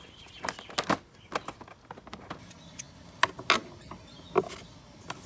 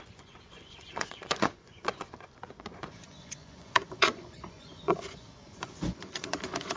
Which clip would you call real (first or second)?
first